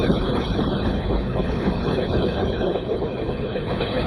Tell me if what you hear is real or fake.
fake